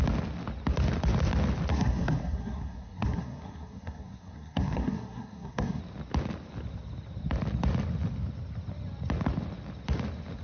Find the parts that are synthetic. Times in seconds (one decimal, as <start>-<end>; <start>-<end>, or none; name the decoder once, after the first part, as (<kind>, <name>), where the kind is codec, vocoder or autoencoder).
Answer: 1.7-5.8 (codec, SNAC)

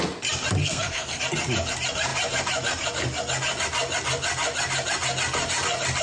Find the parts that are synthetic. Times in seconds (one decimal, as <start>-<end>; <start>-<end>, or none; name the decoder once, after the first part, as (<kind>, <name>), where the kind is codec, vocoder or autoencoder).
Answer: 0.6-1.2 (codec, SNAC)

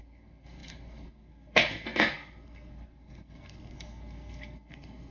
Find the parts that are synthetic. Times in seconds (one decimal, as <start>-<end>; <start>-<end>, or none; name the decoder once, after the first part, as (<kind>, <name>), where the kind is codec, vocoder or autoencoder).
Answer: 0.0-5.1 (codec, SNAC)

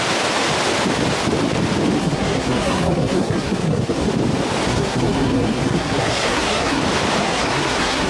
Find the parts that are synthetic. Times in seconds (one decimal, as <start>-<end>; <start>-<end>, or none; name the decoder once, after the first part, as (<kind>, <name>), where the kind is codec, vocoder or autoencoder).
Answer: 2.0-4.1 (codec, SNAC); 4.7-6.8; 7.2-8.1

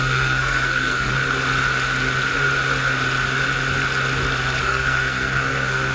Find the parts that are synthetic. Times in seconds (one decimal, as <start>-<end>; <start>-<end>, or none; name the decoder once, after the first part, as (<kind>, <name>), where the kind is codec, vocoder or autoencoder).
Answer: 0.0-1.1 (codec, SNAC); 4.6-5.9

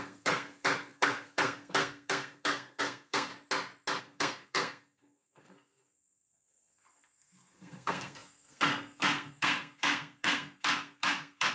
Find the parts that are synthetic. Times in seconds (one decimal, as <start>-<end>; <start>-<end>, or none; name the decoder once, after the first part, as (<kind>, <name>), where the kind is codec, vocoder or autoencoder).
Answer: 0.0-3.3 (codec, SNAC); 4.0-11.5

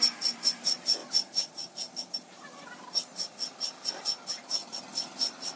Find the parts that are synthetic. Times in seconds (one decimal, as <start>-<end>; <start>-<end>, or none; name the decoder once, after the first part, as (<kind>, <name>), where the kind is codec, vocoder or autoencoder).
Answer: none

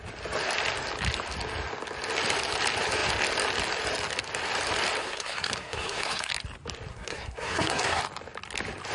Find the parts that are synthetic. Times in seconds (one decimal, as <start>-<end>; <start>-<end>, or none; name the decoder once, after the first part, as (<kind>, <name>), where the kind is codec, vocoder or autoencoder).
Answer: 5.0-6.3 (codec, SNAC); 6.9-8.0